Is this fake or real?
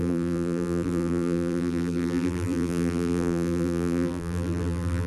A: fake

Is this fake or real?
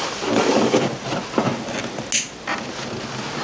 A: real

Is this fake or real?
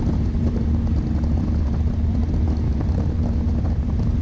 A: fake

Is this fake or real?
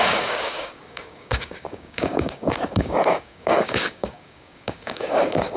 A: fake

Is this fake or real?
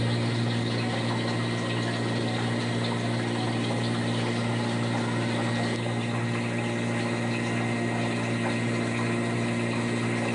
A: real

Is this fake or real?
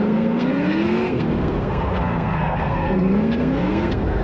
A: fake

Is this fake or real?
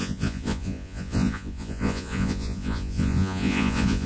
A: fake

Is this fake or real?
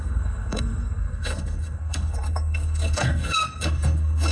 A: fake